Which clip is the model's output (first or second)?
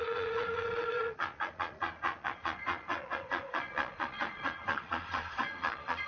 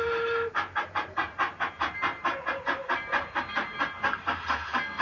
first